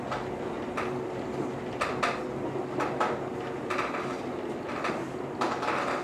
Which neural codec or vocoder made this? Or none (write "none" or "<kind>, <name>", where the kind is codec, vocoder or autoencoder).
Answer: none